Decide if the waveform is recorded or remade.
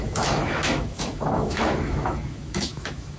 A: remade